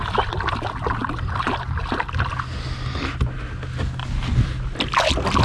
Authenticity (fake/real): real